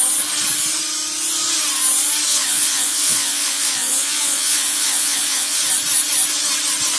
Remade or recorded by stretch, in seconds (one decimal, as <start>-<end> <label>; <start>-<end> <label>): 0.0-2.3 recorded; 2.3-5.6 remade; 5.6-7.0 recorded